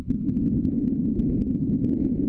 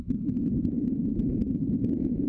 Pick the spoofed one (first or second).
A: second